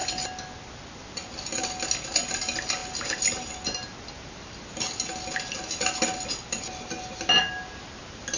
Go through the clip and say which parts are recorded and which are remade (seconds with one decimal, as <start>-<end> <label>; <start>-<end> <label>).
0.0-8.4 recorded

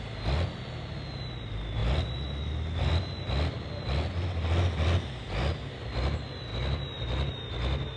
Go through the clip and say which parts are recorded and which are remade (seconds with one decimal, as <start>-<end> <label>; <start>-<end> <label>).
0.0-8.0 recorded

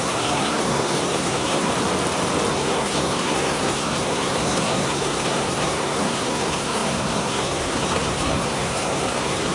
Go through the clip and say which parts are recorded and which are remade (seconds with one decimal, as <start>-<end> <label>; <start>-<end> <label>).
0.0-1.7 remade; 1.7-2.5 recorded; 2.5-9.5 remade

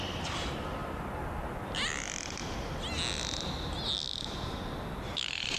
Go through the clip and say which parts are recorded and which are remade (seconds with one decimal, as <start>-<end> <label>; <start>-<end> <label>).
0.0-5.6 recorded